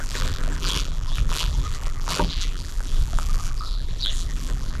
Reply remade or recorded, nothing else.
remade